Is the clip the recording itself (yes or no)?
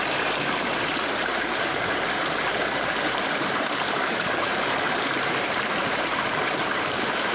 no